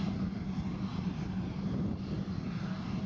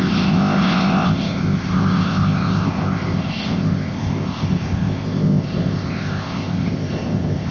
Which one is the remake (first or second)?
second